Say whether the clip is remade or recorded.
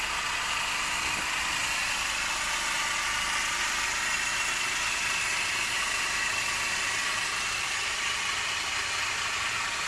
recorded